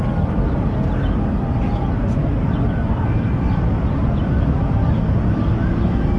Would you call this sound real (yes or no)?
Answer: yes